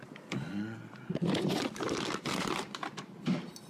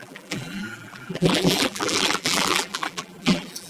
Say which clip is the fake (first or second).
second